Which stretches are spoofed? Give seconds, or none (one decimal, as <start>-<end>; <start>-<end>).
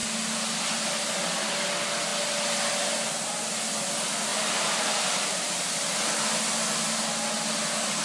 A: 4.3-5.7